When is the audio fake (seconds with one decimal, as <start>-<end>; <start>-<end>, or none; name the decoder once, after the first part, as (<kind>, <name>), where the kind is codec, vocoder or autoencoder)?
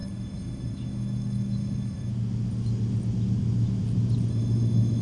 0.0-2.1 (autoencoder, DAC-VAE); 4.3-5.0